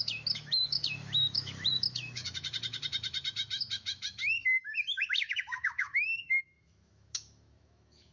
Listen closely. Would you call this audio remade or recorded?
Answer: remade